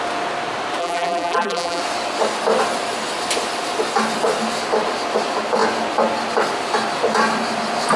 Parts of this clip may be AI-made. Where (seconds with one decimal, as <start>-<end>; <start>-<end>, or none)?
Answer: 0.8-1.8